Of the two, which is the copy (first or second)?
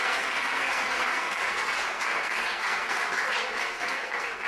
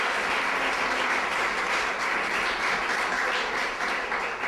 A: first